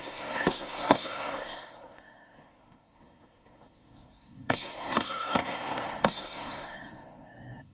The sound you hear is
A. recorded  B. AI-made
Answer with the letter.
B